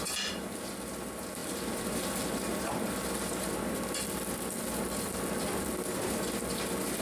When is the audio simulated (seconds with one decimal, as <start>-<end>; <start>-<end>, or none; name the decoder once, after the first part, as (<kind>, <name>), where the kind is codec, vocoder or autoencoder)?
1.4-2.2 (vocoder, BigVGAN v2)